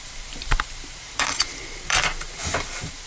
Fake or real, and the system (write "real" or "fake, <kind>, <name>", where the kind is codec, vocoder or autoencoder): fake, vocoder, BigVGAN v2